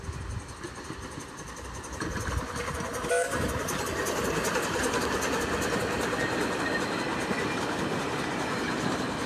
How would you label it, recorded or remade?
recorded